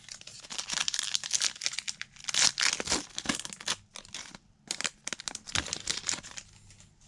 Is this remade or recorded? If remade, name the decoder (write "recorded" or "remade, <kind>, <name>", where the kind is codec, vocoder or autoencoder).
recorded